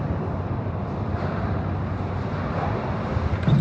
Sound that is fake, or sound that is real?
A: real